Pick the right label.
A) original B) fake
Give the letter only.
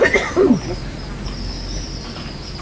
A